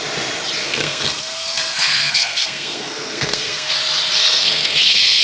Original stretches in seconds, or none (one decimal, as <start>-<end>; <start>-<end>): 0.0-0.6; 3.7-4.2